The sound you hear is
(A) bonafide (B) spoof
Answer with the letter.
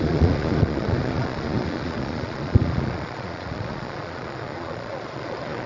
B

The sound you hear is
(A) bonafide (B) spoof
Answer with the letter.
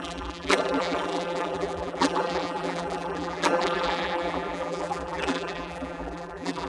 B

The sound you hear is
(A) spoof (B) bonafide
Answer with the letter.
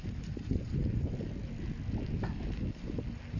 B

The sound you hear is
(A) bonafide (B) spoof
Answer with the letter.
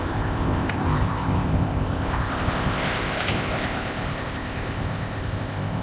B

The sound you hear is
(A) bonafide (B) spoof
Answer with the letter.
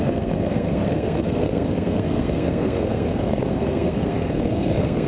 B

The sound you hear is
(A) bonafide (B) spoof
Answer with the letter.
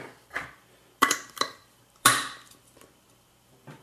B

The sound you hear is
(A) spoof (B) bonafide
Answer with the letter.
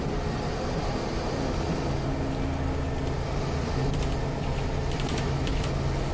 B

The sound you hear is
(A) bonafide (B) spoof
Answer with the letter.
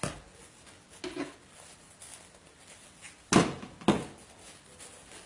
A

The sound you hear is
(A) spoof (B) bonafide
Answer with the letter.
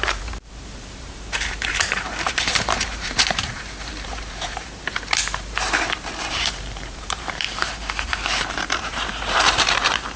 A